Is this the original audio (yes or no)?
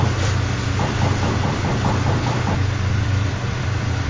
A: no